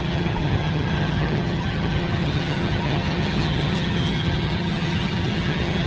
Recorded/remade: remade